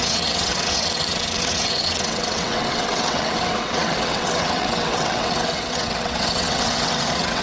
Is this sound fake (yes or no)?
yes